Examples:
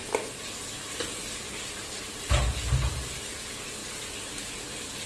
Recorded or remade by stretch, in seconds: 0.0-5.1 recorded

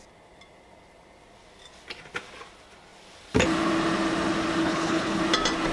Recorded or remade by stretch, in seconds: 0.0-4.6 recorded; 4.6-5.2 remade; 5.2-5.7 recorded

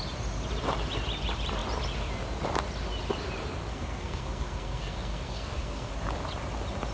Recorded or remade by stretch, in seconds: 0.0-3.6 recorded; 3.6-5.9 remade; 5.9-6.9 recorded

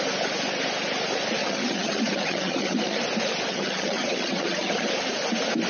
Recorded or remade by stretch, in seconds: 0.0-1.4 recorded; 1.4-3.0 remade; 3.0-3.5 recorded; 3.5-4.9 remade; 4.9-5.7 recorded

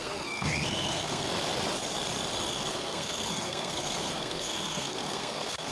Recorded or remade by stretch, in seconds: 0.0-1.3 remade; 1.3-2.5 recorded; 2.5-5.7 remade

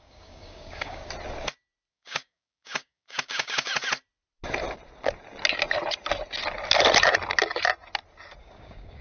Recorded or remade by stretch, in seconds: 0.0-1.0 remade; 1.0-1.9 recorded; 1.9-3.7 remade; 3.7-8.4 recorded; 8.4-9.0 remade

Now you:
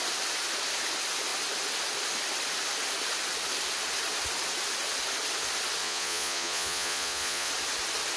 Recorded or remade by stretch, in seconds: 0.0-5.8 recorded; 5.8-7.5 remade; 7.5-8.2 recorded

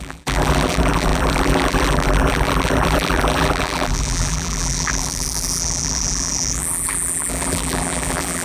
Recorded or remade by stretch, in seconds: 0.0-8.4 remade